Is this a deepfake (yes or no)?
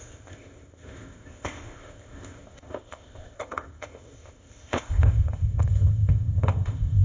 yes